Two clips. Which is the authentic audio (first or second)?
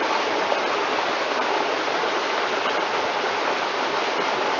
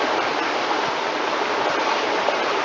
second